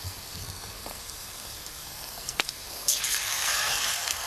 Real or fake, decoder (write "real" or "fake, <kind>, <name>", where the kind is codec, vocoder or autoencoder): fake, codec, SNAC